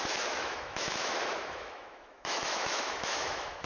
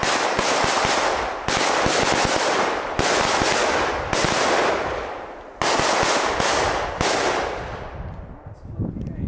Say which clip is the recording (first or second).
second